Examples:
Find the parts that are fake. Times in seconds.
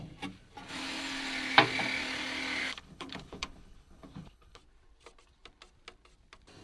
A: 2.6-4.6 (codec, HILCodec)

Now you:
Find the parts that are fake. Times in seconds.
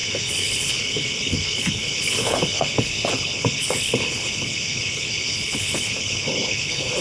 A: 0.0-7.0 (codec, HILCodec)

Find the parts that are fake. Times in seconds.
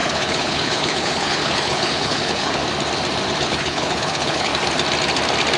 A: 0.0-2.6 (codec, HILCodec); 3.4-4.5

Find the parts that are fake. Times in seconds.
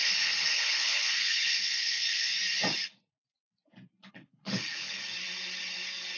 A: 0.0-2.3 (codec, HILCodec); 4.1-5.0